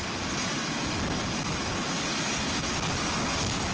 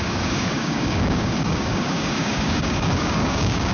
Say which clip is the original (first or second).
first